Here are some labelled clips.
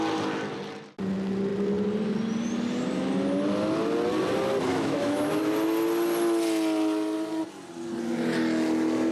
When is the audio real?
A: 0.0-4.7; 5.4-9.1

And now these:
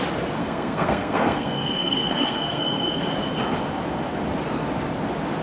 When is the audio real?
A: 0.0-0.4; 3.1-5.4

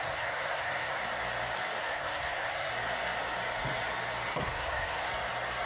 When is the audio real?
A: 1.0-1.8; 2.7-4.4; 5.1-5.7

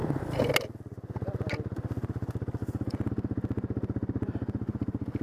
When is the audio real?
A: 0.5-2.6; 3.1-5.2

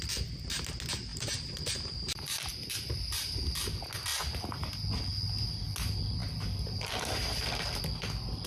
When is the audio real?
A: 0.0-1.1; 3.4-6.2; 7.8-8.5

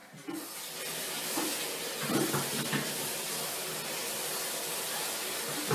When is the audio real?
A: 0.0-5.7

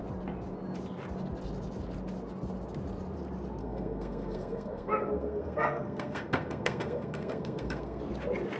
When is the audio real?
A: 0.0-3.6; 8.0-8.6

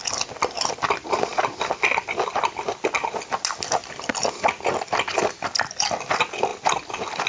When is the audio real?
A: 0.0-7.3